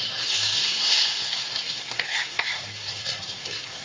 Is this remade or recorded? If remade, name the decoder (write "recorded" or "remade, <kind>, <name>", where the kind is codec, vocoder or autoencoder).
remade, codec, SNAC